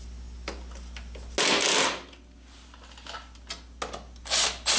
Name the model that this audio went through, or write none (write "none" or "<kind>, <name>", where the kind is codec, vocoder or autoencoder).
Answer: none